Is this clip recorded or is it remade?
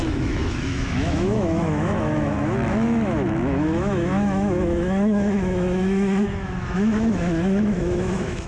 remade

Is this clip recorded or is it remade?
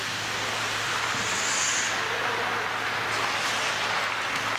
recorded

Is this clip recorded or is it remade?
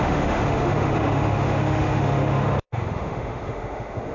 remade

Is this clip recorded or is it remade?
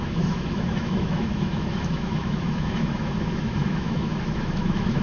remade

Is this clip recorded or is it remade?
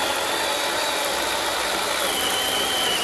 recorded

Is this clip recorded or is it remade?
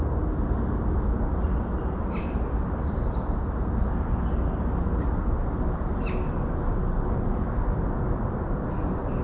recorded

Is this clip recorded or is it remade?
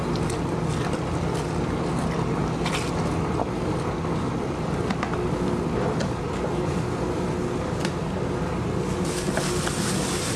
recorded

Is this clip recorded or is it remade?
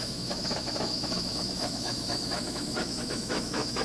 remade